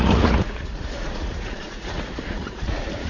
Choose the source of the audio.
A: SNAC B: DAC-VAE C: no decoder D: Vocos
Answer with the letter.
D